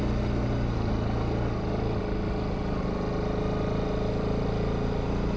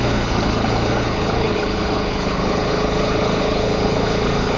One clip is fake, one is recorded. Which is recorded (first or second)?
first